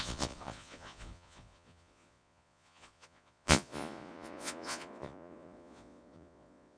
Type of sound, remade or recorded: remade